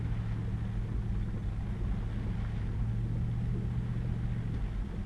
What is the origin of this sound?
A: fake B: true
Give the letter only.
B